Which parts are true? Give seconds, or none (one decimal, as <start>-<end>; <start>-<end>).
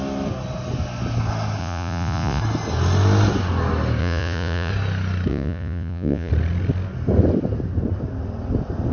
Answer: 0.0-1.6; 2.4-4.0; 4.7-5.3; 6.3-8.9